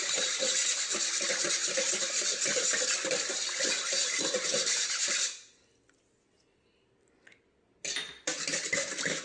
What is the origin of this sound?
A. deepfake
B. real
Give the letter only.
B